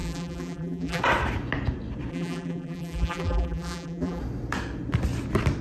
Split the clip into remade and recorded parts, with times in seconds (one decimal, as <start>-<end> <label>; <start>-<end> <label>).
0.0-1.0 remade; 1.0-2.1 recorded; 2.1-4.2 remade; 4.2-5.6 recorded